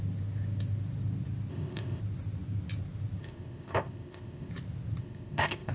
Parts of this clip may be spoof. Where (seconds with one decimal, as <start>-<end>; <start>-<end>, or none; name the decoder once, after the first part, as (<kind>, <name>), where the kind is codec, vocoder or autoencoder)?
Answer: 1.5-2.0 (codec, ZipCodec); 3.2-4.5; 5.0-5.7